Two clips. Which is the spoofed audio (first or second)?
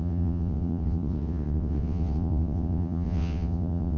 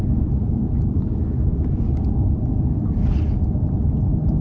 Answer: first